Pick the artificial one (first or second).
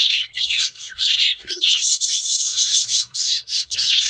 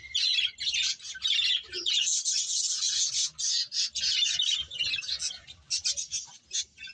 first